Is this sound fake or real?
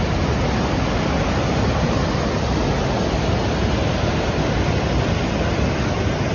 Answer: real